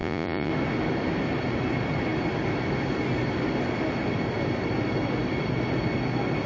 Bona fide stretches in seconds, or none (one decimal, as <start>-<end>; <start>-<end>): 0.5-6.5